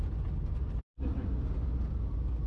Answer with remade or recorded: recorded